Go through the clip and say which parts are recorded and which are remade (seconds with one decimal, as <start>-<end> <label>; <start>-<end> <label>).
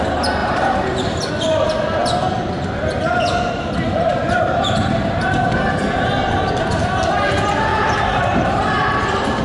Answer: 0.0-0.4 recorded; 0.4-1.3 remade; 1.3-4.1 recorded; 4.1-5.5 remade; 5.5-7.7 recorded; 7.7-8.8 remade; 8.8-9.4 recorded